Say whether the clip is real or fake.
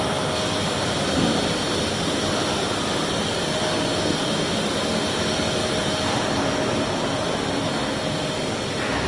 real